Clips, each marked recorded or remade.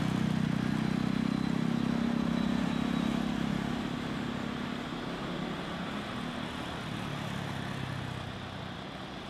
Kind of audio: recorded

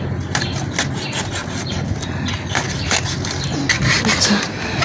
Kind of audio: recorded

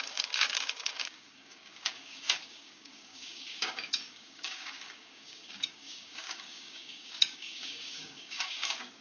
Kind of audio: remade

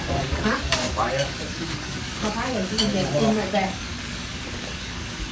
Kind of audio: remade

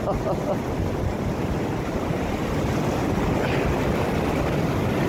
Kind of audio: recorded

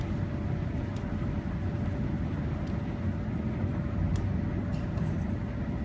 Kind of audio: recorded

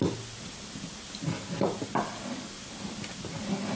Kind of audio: recorded